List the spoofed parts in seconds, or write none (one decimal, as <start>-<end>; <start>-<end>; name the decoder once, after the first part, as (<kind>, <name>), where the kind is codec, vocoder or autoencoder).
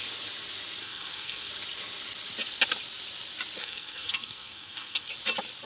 0.8-1.5 (codec, SNAC); 3.6-5.1